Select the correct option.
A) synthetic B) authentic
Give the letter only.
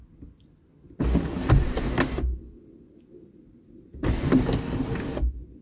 B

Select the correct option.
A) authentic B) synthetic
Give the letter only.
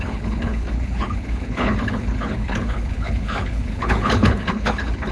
B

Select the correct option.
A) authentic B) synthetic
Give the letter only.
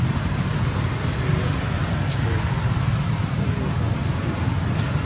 A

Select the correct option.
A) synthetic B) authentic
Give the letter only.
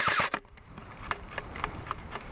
A